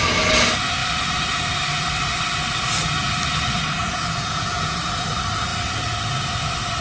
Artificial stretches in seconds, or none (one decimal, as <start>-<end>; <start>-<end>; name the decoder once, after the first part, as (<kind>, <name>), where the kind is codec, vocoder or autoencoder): 3.8-4.8 (vocoder, Vocos)